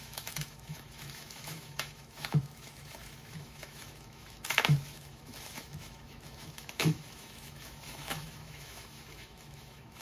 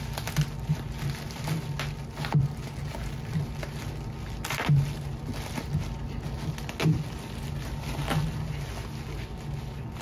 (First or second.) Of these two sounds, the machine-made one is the first